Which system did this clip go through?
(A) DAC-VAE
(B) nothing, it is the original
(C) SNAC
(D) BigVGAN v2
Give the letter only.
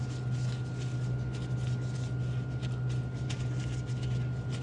B